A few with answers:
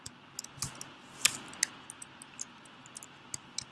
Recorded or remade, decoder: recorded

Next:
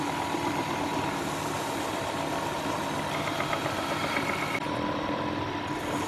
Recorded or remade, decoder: recorded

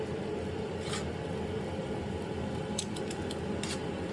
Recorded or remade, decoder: recorded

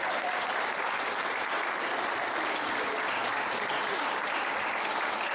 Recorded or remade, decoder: recorded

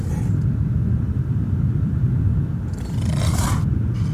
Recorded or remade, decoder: recorded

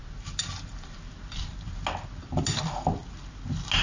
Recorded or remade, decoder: recorded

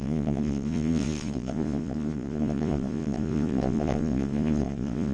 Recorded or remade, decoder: remade, vocoder, Vocos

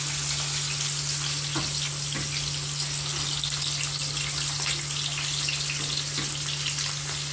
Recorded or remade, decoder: recorded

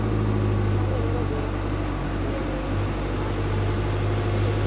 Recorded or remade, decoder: recorded